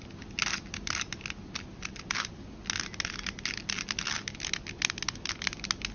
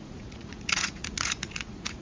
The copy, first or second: second